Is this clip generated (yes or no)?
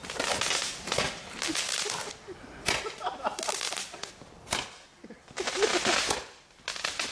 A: no